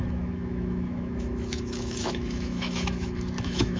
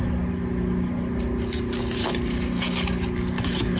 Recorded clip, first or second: second